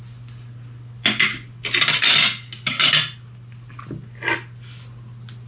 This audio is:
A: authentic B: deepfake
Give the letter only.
A